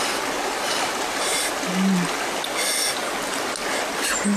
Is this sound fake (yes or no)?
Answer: no